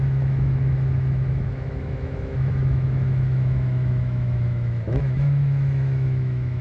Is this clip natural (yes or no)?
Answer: no